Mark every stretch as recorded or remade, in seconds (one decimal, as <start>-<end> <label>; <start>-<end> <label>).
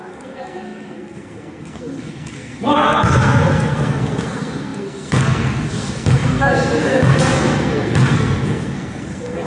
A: 0.0-9.5 remade